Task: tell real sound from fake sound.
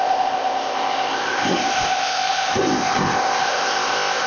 fake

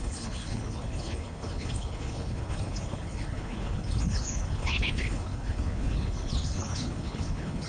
fake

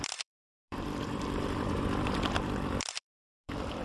fake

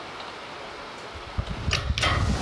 real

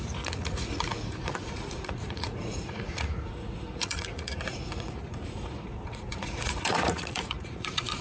fake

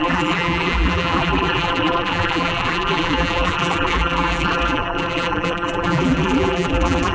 fake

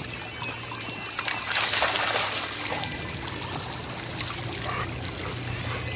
real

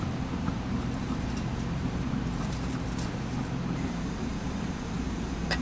fake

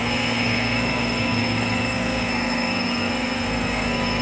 fake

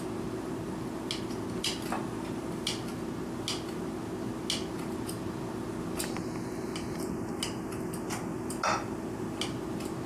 real